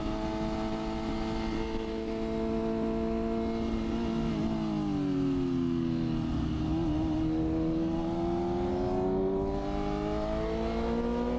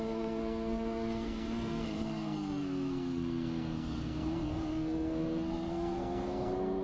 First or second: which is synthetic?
second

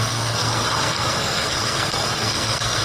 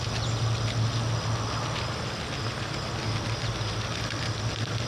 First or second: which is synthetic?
first